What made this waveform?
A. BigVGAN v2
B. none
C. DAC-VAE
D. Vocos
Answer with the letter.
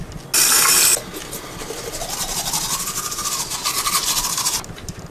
B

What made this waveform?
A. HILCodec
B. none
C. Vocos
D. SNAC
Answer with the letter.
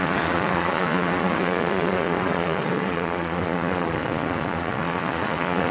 C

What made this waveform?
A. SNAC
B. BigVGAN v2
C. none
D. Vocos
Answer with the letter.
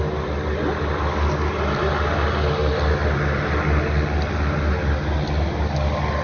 C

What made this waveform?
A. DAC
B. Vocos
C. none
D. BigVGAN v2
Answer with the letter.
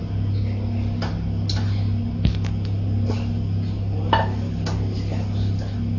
C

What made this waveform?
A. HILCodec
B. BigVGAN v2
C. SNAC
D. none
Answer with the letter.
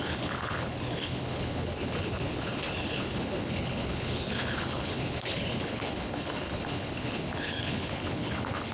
A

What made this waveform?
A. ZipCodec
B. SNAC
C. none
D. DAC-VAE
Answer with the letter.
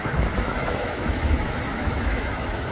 D